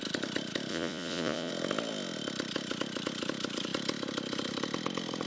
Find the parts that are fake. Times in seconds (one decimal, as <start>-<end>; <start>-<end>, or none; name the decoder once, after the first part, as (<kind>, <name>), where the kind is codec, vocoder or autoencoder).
0.7-1.5 (vocoder, Vocos)